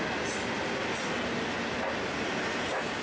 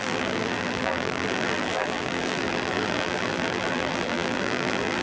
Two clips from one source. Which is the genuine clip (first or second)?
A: first